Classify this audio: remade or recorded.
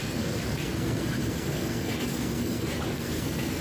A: remade